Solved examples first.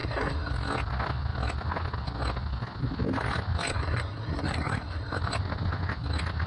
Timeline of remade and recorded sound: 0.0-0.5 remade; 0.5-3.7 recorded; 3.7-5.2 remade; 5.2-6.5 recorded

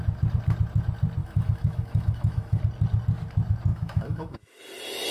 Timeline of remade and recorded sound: 0.0-1.2 recorded; 1.2-2.6 remade; 2.6-3.7 recorded; 3.7-4.6 remade; 4.6-5.1 recorded

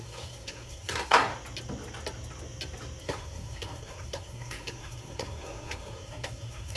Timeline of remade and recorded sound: 0.0-1.3 remade; 1.3-3.0 recorded; 3.0-6.8 remade

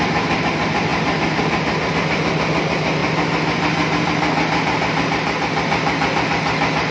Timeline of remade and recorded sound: 0.0-6.9 recorded

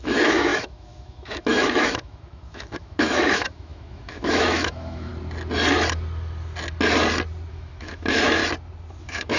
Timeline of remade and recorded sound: 0.0-5.1 remade; 5.1-7.5 recorded; 7.5-8.4 remade; 8.4-9.0 recorded; 9.0-9.4 remade

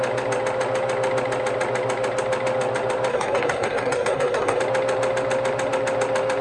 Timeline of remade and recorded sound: 0.0-3.1 recorded; 3.1-4.6 remade; 4.6-6.4 recorded

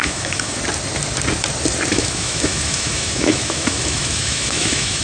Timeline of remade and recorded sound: 0.0-0.6 remade; 0.6-1.9 recorded; 1.9-5.0 remade

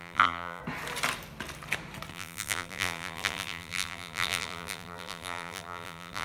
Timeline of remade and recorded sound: 0.0-0.6 remade; 0.6-2.1 recorded; 2.1-6.2 remade